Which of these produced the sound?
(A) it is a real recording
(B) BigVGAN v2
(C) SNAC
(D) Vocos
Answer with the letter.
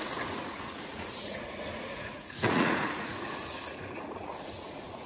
D